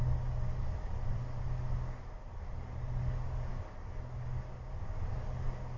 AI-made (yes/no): no